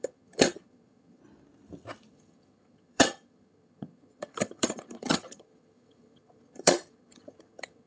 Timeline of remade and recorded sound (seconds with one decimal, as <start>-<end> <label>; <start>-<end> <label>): 0.0-1.2 remade; 1.2-2.1 recorded; 2.1-7.9 remade